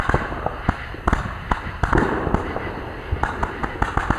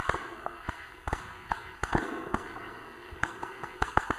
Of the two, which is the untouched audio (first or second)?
first